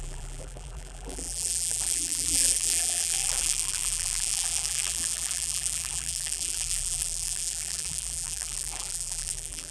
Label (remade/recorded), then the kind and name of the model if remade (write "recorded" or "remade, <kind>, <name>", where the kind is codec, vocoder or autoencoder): remade, vocoder, BigVGAN v2